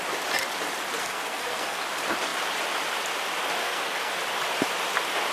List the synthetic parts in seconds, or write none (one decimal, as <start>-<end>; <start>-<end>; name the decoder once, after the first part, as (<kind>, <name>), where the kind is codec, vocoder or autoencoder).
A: 1.0-1.8 (codec, SNAC); 3.6-4.1